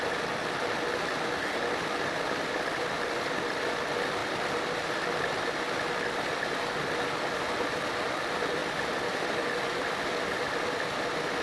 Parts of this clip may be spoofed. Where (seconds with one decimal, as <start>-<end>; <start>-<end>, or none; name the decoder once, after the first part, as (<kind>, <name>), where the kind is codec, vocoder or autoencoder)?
4.2-5.3 (vocoder, BigVGAN v2)